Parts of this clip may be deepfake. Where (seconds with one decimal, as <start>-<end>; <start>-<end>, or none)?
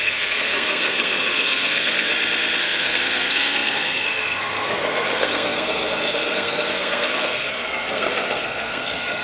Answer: 0.0-2.1; 2.6-9.2